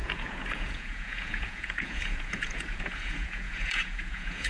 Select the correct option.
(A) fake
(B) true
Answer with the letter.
A